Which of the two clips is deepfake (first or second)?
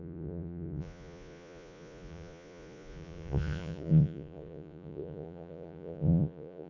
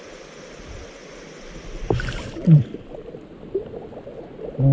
first